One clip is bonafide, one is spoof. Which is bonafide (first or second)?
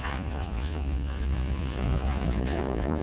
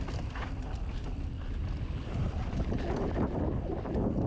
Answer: second